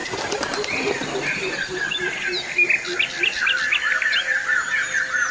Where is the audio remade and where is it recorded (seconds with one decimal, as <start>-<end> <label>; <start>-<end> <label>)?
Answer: 0.0-5.3 recorded